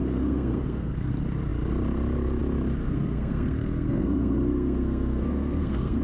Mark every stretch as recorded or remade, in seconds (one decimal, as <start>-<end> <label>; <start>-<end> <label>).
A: 0.0-1.1 remade; 1.1-2.8 recorded; 2.8-6.0 remade